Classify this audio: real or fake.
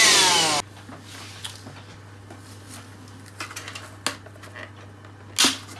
real